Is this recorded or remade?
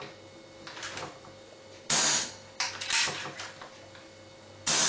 recorded